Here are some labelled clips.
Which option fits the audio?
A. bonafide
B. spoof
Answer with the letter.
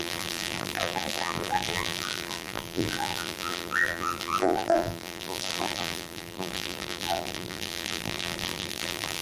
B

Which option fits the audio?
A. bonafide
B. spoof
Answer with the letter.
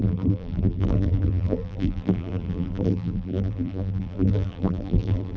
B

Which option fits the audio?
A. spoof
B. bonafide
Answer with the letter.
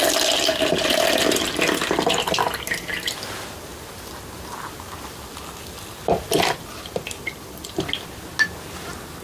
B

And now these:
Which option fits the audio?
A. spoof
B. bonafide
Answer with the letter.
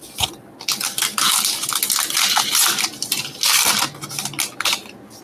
B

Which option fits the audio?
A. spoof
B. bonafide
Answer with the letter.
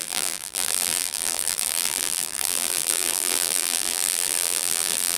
A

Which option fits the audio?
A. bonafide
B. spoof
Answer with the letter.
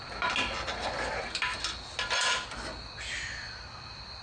A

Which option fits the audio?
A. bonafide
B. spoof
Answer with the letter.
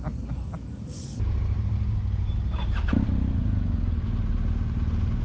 A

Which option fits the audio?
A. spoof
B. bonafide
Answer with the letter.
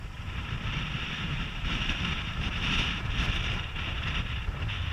A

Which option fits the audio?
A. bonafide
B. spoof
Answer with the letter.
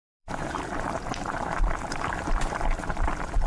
B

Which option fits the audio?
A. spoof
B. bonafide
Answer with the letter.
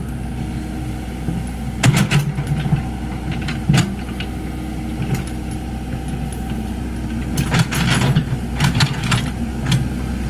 B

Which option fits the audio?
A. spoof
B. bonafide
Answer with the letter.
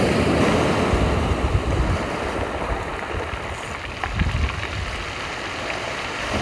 B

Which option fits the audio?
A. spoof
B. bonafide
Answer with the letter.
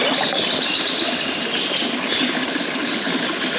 B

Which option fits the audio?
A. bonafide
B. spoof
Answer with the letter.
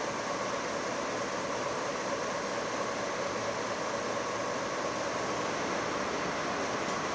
A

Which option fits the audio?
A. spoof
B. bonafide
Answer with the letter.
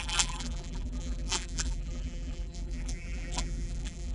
A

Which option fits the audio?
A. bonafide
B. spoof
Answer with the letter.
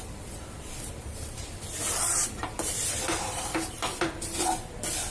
B